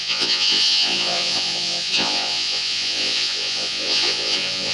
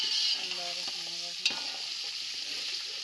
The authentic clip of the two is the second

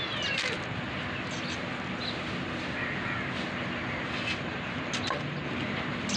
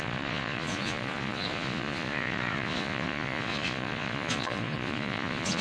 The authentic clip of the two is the first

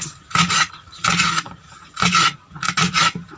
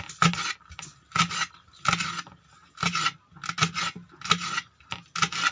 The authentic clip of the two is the second